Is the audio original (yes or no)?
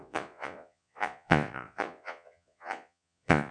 no